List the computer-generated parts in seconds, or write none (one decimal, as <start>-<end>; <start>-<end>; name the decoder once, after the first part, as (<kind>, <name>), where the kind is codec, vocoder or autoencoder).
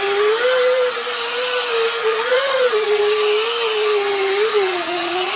2.0-3.0 (vocoder, Vocos); 4.5-5.4